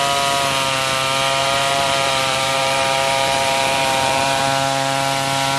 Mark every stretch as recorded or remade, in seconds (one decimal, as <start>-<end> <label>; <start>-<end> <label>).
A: 0.0-1.4 recorded; 1.4-4.4 remade; 4.4-5.6 recorded